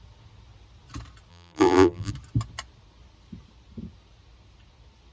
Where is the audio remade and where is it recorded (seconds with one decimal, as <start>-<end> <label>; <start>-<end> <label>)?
0.0-1.3 recorded; 1.3-2.1 remade; 2.1-5.1 recorded